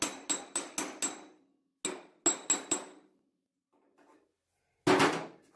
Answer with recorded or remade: recorded